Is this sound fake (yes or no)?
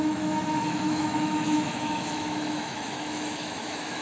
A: yes